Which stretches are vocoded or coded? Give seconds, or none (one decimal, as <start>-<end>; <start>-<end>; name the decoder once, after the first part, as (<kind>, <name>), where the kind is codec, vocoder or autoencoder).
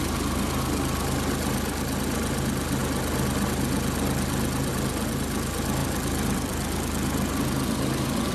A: 5.8-7.3 (vocoder, BigVGAN v2)